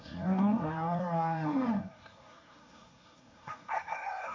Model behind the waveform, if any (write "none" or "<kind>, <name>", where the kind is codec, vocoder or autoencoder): codec, SNAC